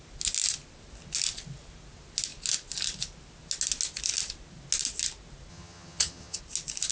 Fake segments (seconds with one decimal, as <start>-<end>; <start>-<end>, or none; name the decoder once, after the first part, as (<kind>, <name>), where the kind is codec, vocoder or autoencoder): 5.5-6.4 (vocoder, HiFi-GAN)